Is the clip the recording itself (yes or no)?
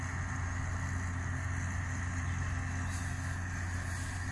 yes